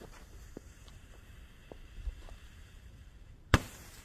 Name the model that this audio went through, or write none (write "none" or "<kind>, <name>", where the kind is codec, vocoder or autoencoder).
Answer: vocoder, BigVGAN v2